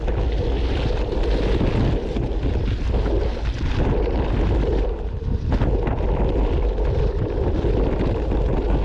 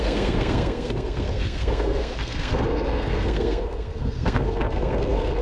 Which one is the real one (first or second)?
first